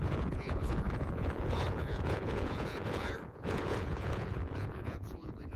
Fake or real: fake